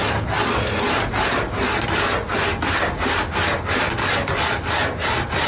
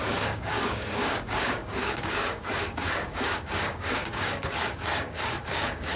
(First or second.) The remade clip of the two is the second